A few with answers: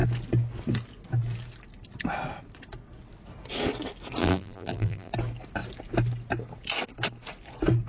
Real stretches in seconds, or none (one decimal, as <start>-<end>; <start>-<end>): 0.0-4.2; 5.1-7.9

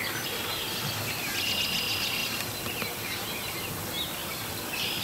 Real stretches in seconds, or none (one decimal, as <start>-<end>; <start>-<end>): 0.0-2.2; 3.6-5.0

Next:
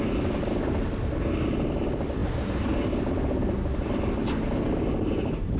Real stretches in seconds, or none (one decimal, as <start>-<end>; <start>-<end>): 0.0-5.6